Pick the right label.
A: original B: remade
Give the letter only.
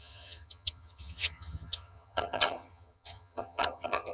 B